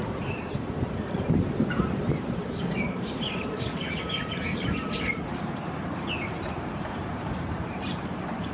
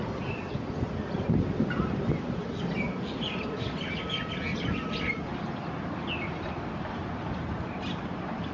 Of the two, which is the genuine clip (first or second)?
second